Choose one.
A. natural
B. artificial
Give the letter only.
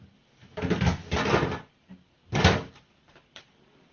A